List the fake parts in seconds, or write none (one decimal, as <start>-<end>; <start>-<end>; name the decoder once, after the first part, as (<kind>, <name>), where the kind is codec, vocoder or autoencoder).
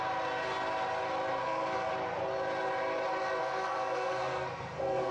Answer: 1.4-1.9 (codec, SNAC); 3.4-5.1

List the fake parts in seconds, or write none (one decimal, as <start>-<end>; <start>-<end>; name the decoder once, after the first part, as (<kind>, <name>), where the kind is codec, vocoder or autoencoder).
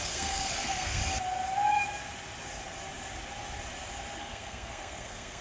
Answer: 0.0-1.0 (codec, SNAC); 4.2-5.4